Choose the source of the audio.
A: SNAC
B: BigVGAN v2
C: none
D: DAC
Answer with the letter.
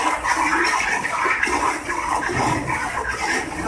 C